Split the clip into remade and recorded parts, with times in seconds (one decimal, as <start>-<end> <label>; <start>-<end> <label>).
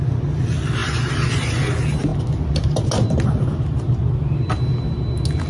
0.0-5.5 recorded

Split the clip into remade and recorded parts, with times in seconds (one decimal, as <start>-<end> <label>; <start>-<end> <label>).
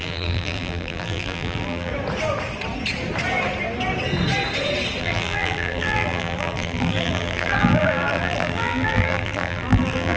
0.0-1.9 remade; 1.9-5.0 recorded; 5.0-10.2 remade